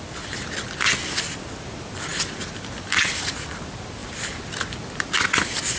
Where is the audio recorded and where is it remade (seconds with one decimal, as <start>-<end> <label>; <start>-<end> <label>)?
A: 0.0-5.8 recorded